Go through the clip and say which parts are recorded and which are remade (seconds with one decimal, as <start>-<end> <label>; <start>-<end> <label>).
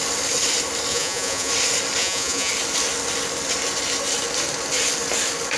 0.0-0.9 recorded; 0.9-1.5 remade; 1.5-2.0 recorded; 2.0-2.5 remade; 2.5-5.6 recorded